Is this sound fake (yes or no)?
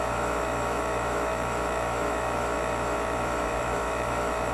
yes